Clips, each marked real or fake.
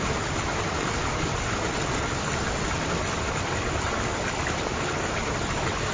fake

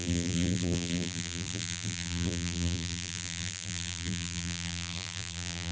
fake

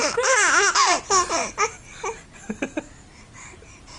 real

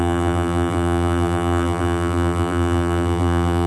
fake